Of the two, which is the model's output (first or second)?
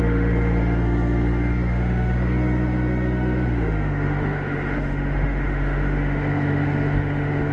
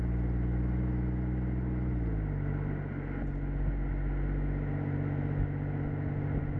first